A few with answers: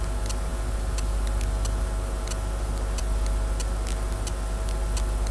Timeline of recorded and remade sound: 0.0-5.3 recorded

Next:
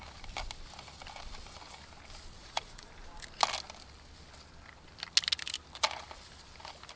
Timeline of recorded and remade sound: 0.0-2.4 recorded; 2.4-2.9 remade; 2.9-7.0 recorded

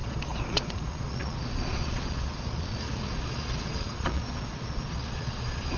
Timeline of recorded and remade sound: 0.0-5.8 remade

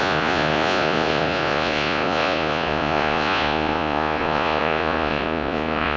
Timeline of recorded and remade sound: 0.0-6.0 remade

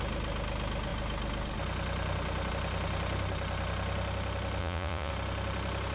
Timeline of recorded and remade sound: 0.0-4.6 recorded; 4.6-5.1 remade; 5.1-5.9 recorded

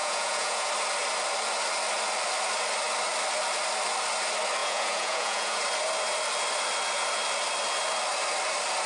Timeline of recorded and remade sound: 0.0-0.7 remade; 0.7-4.6 recorded; 4.6-5.6 remade; 5.6-8.9 recorded

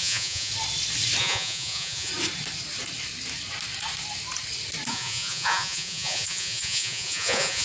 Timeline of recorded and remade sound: 0.0-0.5 remade; 0.5-1.2 recorded; 1.2-2.1 remade; 2.1-4.9 recorded; 4.9-7.6 remade